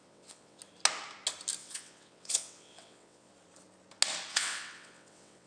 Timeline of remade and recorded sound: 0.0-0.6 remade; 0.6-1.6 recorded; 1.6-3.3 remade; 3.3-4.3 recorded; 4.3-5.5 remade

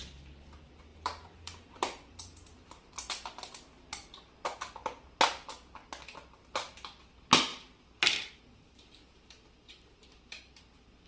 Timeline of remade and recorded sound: 0.0-0.9 recorded; 0.9-4.3 remade; 4.3-7.5 recorded; 7.5-10.6 remade; 10.6-11.1 recorded

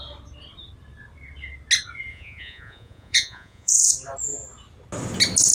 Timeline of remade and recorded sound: 0.0-2.1 recorded; 2.1-3.9 remade; 3.9-5.5 recorded

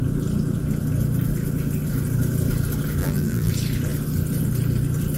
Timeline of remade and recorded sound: 0.0-3.0 recorded; 3.0-3.5 remade; 3.5-5.2 recorded

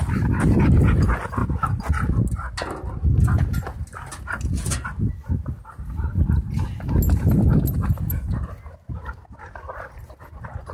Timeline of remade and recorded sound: 0.0-10.7 recorded

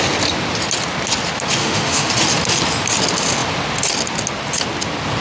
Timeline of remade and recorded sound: 0.0-1.6 recorded; 1.6-2.1 remade; 2.1-5.2 recorded